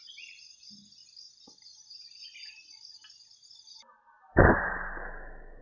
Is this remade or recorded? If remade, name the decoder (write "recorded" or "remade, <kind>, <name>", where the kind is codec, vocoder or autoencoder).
recorded